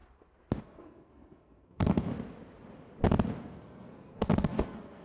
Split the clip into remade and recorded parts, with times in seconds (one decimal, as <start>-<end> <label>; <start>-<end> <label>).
0.0-0.6 recorded; 0.6-2.1 remade; 2.1-3.4 recorded; 3.4-5.0 remade